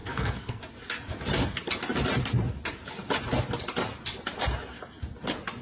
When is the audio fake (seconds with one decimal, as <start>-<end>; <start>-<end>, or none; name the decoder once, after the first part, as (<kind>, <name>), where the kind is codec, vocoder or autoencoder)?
0.0-0.6 (codec, SNAC)